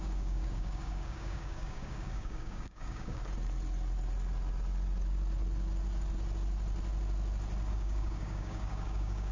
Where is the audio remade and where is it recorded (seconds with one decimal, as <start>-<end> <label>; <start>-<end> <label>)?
0.0-3.2 remade; 3.2-7.7 recorded; 7.7-9.3 remade